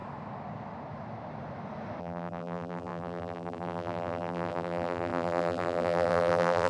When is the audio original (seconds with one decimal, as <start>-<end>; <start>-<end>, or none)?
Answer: 0.0-2.0